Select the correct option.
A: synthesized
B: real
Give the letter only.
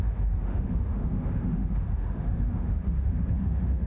A